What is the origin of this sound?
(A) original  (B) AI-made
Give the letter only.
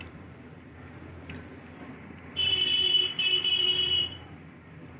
B